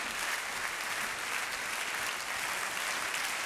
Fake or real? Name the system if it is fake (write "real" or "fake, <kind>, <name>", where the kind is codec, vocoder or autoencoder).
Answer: real